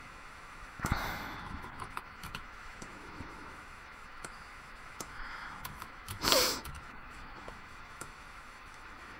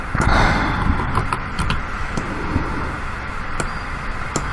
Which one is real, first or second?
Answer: second